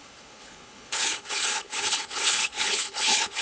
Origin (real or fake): fake